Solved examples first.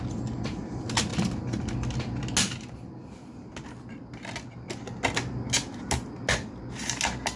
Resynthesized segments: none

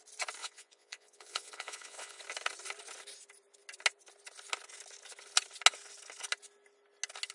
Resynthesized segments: 0.4-2.2 (vocoder, Vocos)

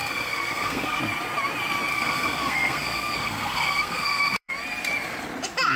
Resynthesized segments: 0.0-1.0 (codec, SNAC); 1.9-4.5

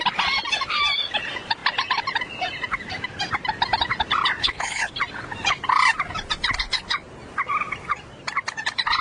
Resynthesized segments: 4.4-4.9 (codec, HILCodec)